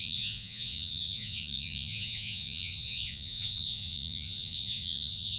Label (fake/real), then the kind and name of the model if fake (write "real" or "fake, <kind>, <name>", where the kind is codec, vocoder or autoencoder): fake, vocoder, Vocos